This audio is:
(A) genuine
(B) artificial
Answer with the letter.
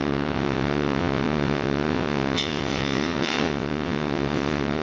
B